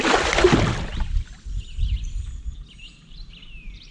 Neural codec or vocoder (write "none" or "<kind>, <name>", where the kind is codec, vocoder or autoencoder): none